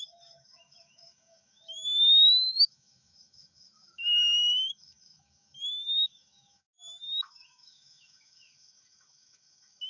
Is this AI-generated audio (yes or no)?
yes